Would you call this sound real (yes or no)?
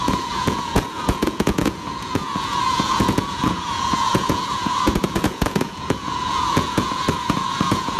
no